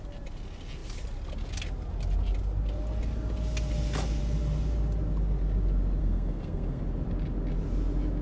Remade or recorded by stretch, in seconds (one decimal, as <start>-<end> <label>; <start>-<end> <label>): 0.0-6.0 recorded; 6.0-6.8 remade; 6.8-8.2 recorded